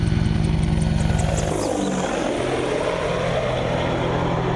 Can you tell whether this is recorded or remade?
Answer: recorded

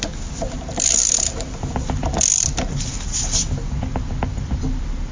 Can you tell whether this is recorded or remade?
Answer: recorded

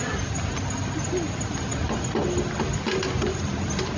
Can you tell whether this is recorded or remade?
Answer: recorded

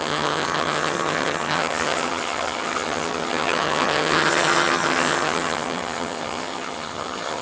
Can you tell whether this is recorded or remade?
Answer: remade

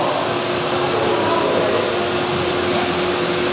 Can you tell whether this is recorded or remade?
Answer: recorded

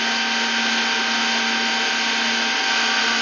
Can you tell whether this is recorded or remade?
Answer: recorded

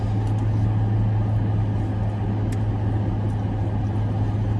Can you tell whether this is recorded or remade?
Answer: recorded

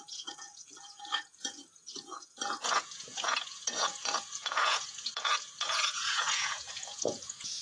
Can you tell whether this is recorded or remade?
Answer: remade